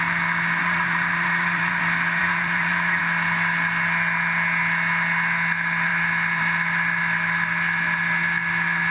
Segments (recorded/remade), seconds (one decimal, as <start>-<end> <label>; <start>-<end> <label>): 0.0-0.6 recorded; 0.6-1.8 remade; 1.8-2.2 recorded; 2.2-3.0 remade; 3.0-8.9 recorded